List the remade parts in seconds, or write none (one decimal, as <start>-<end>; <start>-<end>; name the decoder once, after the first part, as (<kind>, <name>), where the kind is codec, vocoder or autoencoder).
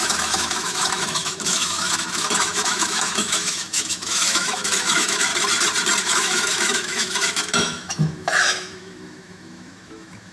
0.0-5.3 (autoencoder, DAC-VAE); 6.0-10.3